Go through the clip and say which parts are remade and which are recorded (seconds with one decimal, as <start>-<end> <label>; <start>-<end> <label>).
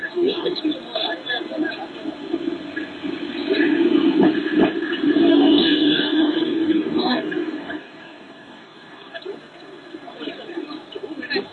0.0-0.6 remade; 0.6-5.3 recorded; 5.3-9.2 remade; 9.2-11.5 recorded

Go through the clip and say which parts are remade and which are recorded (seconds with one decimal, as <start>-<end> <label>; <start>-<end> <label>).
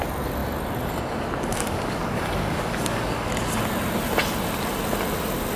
0.0-1.5 recorded; 1.5-3.3 remade; 3.3-5.6 recorded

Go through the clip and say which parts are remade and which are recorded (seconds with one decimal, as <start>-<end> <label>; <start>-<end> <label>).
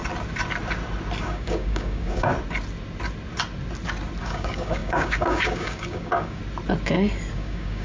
0.0-1.2 recorded; 1.2-2.3 remade; 2.3-4.2 recorded; 4.2-6.4 remade; 6.4-7.3 recorded; 7.3-7.8 remade